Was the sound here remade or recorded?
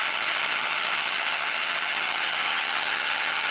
remade